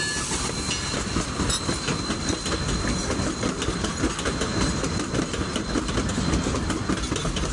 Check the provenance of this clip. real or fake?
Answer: real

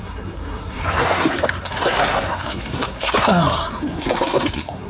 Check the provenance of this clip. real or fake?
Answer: fake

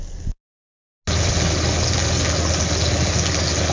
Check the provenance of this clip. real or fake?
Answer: real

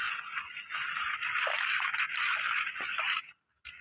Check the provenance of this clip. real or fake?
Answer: real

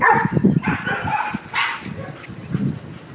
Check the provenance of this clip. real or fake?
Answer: real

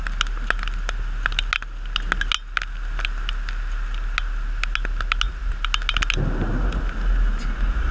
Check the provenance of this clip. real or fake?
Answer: real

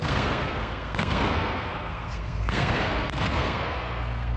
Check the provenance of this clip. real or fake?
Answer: fake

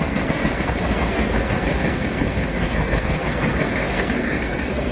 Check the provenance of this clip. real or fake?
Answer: fake